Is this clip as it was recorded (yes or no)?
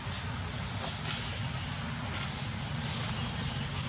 yes